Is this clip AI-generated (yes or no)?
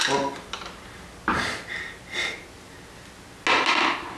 no